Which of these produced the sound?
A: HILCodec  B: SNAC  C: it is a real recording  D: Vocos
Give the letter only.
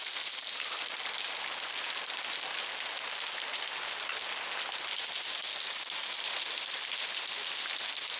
C